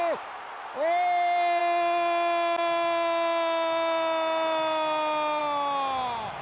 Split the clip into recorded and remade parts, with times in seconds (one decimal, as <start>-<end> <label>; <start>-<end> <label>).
0.0-6.4 recorded